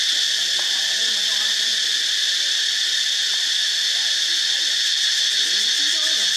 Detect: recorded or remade recorded